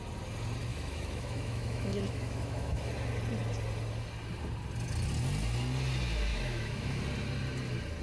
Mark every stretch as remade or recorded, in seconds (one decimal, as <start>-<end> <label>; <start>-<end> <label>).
0.0-0.7 recorded; 0.7-2.9 remade; 2.9-6.3 recorded; 6.3-7.0 remade; 7.0-8.0 recorded